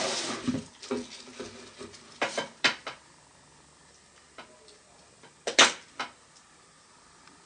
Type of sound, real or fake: real